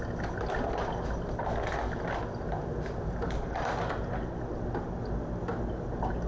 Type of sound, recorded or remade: recorded